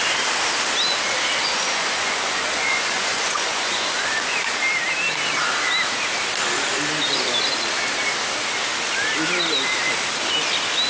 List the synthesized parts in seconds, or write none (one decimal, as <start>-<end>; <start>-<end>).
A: 1.4-4.4